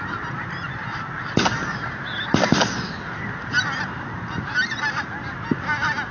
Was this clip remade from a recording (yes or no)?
no